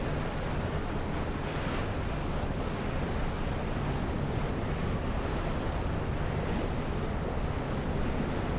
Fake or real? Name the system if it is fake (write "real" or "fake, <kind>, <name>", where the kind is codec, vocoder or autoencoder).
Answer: real